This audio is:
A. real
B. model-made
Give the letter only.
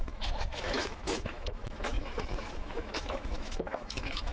B